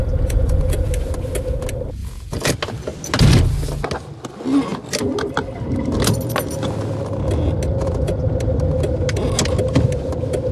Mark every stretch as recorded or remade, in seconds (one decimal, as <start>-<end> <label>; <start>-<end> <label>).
0.0-0.9 remade; 0.9-2.0 recorded; 2.0-2.5 remade; 2.5-7.7 recorded; 7.7-8.3 remade; 8.3-10.5 recorded